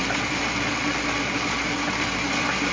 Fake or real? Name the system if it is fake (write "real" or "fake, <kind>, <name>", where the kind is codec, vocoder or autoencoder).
real